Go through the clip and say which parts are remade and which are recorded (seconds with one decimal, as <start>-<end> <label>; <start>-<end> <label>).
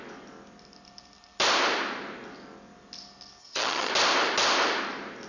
0.0-3.4 recorded; 3.4-3.9 remade; 3.9-5.3 recorded